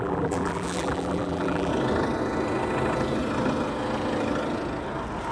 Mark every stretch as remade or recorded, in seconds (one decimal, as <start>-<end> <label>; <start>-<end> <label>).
0.0-1.7 remade; 1.7-5.3 recorded